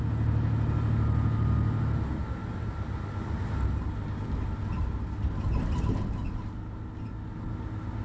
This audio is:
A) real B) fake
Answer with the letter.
A